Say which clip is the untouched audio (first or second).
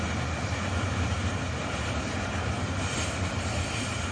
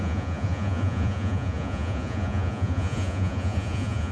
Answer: first